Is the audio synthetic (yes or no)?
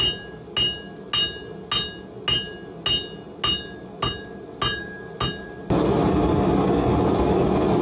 no